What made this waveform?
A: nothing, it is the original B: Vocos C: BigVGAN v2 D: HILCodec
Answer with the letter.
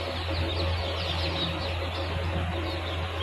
A